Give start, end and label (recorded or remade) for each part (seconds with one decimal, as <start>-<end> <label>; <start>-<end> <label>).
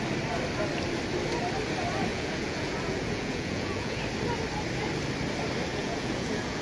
0.0-2.1 recorded; 2.1-4.0 remade; 4.0-5.7 recorded; 5.7-6.6 remade